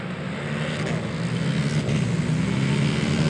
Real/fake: real